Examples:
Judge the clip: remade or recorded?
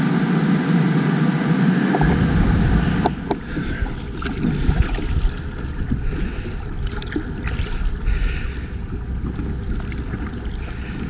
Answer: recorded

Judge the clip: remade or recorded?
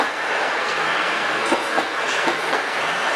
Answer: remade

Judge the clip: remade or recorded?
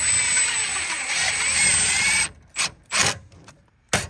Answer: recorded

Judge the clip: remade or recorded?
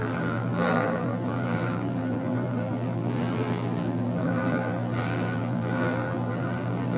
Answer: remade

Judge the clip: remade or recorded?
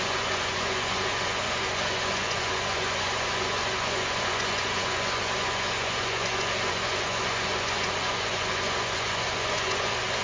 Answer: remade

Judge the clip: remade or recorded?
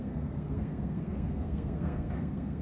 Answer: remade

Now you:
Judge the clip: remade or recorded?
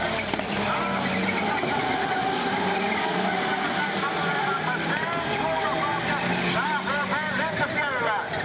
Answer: recorded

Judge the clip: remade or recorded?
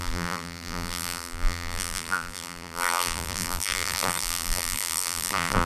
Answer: remade